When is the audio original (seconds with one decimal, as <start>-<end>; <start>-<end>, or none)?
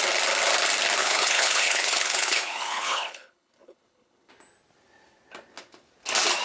0.0-1.0; 4.3-6.4